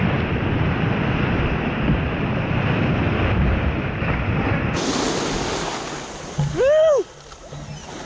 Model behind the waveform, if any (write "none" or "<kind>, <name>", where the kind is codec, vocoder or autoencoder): none